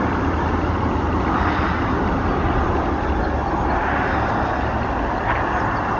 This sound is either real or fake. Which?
real